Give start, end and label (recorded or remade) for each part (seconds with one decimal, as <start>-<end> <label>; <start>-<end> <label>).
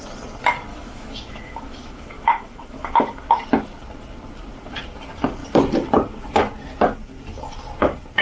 0.0-0.7 recorded; 0.7-3.3 remade; 3.3-8.2 recorded